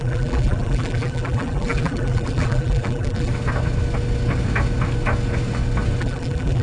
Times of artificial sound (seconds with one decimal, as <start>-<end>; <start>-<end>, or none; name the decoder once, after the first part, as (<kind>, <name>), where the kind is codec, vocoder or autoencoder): 0.0-3.3 (vocoder, BigVGAN v2); 6.0-6.6